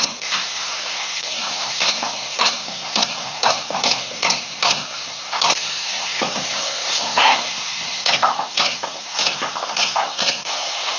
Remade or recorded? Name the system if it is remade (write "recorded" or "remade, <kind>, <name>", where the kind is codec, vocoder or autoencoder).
remade, codec, SNAC